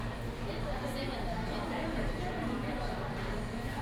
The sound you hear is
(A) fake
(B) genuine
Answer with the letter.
B